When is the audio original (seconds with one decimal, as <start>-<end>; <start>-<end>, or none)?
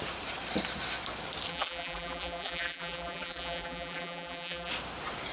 0.0-1.5; 4.7-5.3